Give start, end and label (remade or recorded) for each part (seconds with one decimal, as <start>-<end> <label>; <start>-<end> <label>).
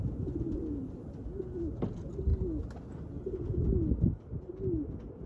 0.0-5.3 recorded